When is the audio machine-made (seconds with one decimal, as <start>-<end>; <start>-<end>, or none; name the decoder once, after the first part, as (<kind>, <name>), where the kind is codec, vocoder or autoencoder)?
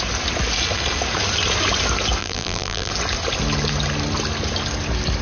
2.2-2.9 (vocoder, BigVGAN v2)